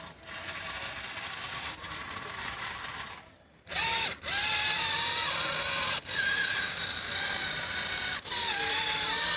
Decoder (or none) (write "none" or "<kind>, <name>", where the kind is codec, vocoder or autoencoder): none